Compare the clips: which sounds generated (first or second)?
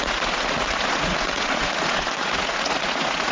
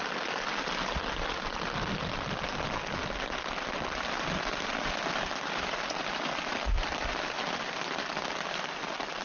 first